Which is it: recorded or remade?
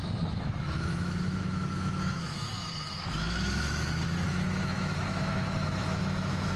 remade